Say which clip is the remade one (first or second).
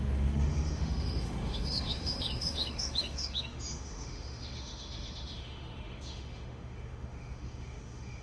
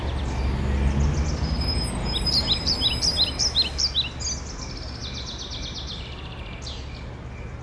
first